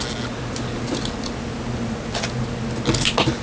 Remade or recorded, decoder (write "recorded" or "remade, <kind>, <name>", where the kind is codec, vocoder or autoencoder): recorded